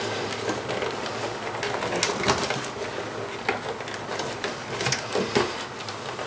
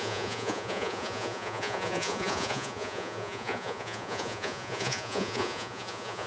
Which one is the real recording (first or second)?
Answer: first